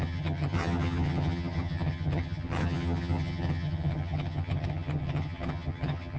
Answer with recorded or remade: remade